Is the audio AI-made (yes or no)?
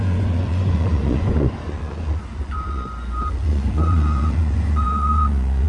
yes